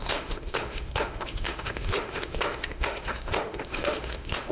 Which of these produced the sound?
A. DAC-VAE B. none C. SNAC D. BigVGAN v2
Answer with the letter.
A